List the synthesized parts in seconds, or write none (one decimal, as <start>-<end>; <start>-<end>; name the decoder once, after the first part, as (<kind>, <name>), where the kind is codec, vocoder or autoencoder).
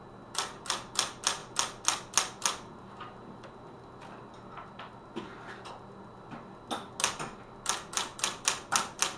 none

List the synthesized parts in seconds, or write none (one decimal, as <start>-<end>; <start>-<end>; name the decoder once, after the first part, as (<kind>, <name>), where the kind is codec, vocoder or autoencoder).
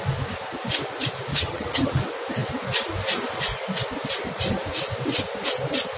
1.3-2.0 (vocoder, HiFi-GAN)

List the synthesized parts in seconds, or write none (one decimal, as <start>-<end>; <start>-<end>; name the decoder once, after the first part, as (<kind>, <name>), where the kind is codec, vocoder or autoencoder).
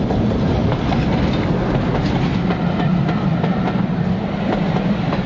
none